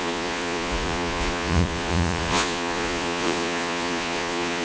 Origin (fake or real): fake